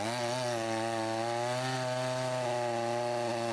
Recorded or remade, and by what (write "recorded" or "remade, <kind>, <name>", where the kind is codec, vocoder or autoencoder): recorded